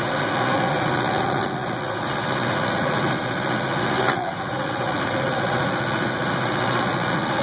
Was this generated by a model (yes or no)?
yes